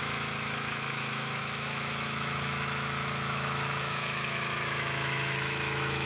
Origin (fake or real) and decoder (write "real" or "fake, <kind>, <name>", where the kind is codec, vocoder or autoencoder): fake, autoencoder, DAC-VAE